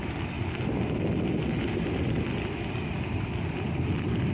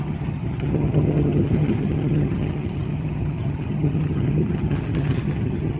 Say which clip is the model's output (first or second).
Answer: second